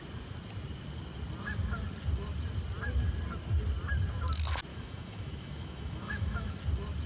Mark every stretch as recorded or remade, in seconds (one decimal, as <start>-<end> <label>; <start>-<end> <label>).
0.0-4.7 recorded; 4.7-6.6 remade; 6.6-7.1 recorded